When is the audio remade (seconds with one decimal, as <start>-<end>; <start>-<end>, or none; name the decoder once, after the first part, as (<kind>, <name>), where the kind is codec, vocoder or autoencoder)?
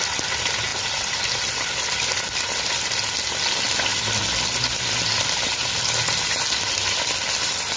0.7-2.2 (vocoder, BigVGAN v2); 3.9-5.2